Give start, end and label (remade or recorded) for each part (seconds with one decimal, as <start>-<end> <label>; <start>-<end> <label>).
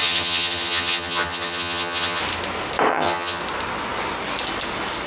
0.0-2.2 remade; 2.2-2.9 recorded; 2.9-3.4 remade; 3.4-5.1 recorded